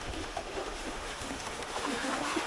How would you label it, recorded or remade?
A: remade